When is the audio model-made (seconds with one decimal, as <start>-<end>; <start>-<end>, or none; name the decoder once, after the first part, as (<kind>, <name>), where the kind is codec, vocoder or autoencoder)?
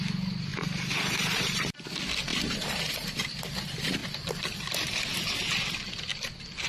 0.5-1.8 (vocoder, BigVGAN v2); 2.3-3.4